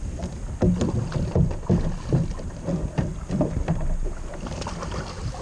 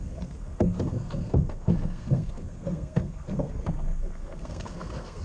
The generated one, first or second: second